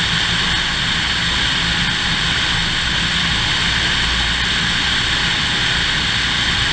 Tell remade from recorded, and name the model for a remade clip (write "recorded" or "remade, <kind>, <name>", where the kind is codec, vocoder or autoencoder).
recorded